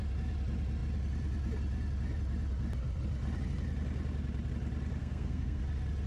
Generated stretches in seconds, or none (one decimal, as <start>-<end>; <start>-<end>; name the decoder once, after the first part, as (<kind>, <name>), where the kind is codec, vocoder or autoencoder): 5.0-5.6 (codec, SNAC)